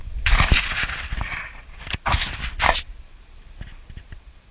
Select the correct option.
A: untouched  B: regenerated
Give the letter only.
A